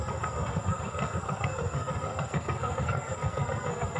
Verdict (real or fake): fake